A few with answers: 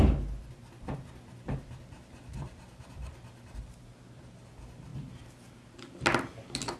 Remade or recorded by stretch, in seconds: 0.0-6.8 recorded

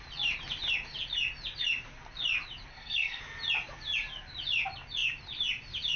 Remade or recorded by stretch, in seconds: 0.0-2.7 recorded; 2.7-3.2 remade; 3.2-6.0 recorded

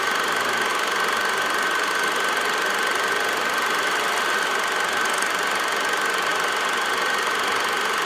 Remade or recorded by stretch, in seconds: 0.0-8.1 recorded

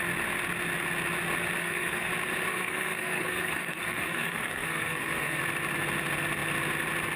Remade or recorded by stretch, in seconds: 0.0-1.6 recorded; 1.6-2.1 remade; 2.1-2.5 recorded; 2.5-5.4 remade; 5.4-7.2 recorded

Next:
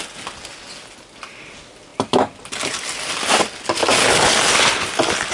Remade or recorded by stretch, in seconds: 0.0-5.3 recorded

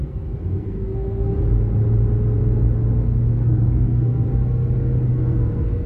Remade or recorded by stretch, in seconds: 0.0-1.3 remade; 1.3-3.3 recorded; 3.3-4.3 remade; 4.3-5.1 recorded; 5.1-5.9 remade

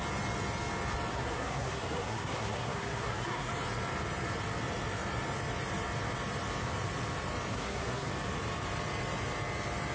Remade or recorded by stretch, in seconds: 0.0-1.1 recorded; 1.1-3.5 remade; 3.5-7.5 recorded; 7.5-8.1 remade; 8.1-9.9 recorded